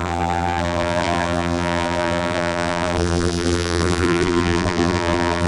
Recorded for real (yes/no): no